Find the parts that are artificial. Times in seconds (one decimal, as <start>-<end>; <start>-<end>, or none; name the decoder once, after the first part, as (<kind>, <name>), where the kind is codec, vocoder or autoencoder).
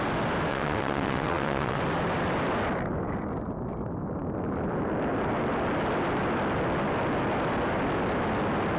0.5-1.8 (vocoder, WaveNeXt)